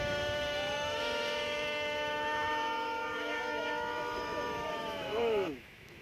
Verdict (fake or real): fake